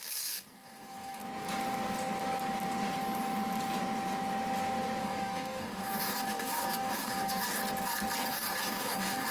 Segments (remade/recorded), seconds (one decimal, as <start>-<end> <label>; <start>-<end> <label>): 0.0-1.2 remade; 1.2-5.0 recorded; 5.0-7.6 remade; 7.6-8.3 recorded; 8.3-9.3 remade